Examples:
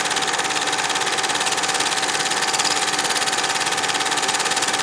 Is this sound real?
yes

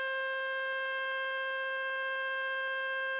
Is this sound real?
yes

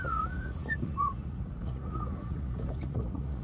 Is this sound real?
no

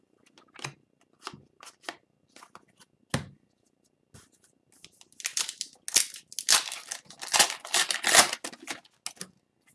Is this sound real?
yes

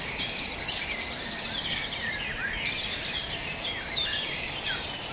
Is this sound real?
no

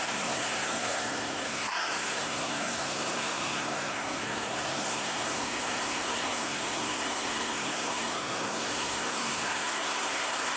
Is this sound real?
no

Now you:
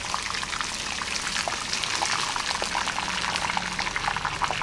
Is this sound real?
yes